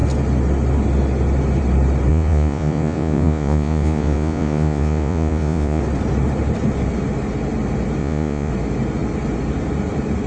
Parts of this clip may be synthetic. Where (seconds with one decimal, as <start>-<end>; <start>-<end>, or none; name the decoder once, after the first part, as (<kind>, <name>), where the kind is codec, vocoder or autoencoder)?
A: 2.1-5.8 (vocoder, Vocos); 8.0-8.5